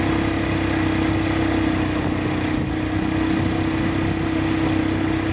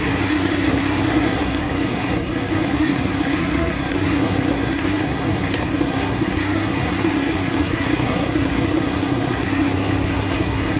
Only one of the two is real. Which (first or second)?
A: first